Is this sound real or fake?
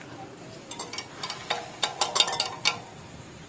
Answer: real